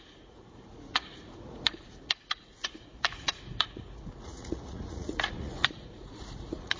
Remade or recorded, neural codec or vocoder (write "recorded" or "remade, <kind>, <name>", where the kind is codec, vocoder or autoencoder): remade, vocoder, Vocos